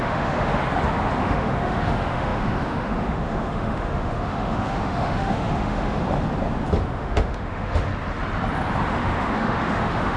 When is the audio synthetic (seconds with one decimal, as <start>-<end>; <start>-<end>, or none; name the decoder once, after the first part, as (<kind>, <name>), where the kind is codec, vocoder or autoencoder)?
0.0-0.6 (autoencoder, DAC-VAE); 1.2-6.0; 6.8-7.9; 8.8-10.2